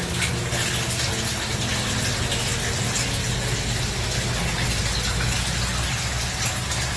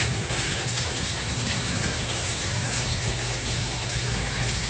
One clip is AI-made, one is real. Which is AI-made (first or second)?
second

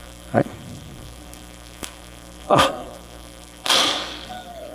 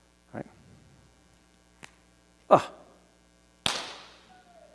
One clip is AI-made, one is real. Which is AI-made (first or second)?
first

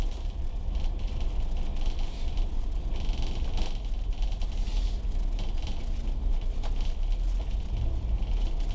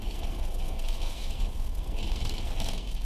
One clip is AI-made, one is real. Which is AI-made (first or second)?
second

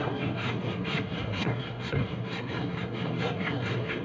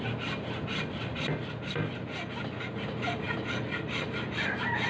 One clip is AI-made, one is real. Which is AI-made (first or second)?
first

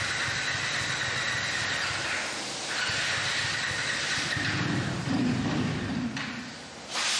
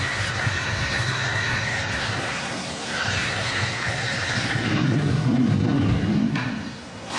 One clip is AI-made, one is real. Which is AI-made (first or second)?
second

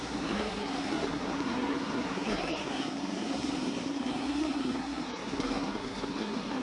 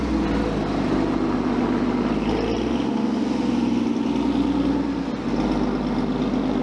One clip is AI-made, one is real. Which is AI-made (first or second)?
first